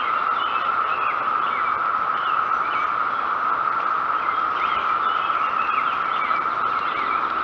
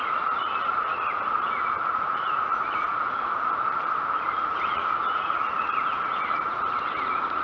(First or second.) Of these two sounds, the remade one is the second